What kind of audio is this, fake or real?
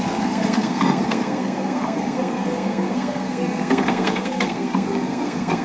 fake